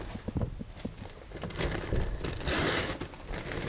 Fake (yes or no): no